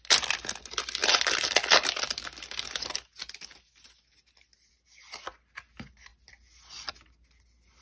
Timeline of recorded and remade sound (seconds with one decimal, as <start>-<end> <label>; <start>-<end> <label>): 0.0-7.8 recorded